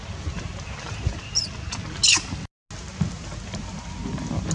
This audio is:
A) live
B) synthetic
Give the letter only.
A